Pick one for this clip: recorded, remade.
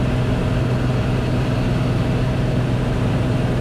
recorded